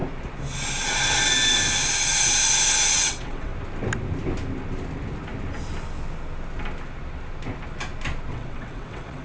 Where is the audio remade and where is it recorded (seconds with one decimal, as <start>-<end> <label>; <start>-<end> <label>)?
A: 0.0-2.9 recorded; 2.9-3.5 remade; 3.5-8.3 recorded; 8.3-9.2 remade